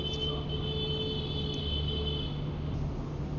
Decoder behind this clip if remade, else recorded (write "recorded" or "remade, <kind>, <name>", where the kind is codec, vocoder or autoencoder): recorded